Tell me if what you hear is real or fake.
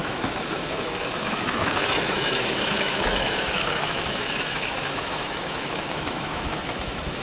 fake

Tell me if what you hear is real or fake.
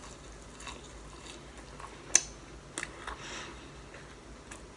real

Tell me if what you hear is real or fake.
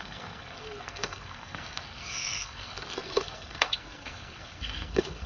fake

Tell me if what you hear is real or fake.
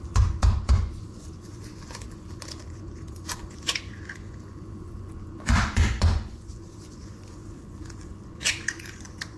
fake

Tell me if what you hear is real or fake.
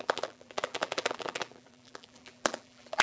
fake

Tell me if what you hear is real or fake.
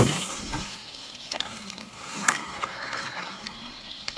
fake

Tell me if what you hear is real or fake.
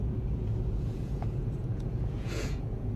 fake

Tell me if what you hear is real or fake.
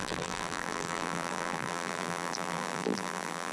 fake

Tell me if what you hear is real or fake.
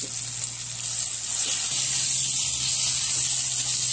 real